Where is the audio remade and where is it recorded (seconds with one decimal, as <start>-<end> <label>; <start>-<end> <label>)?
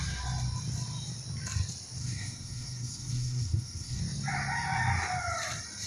0.0-2.0 recorded; 2.0-4.0 remade; 4.0-5.9 recorded